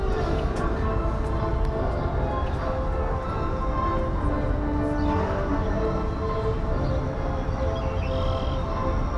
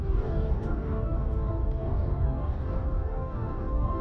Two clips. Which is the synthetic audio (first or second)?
second